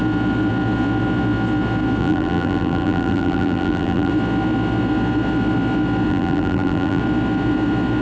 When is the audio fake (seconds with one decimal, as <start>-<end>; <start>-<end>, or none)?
2.0-4.1; 6.1-7.0